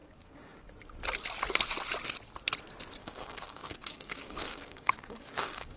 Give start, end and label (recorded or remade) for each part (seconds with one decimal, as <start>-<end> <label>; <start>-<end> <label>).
0.0-0.7 remade; 0.7-3.0 recorded; 3.0-5.8 remade